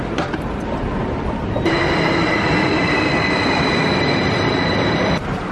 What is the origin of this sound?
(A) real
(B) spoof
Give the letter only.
B